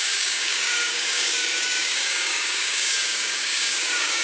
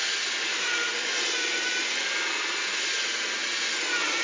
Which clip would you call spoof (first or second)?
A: first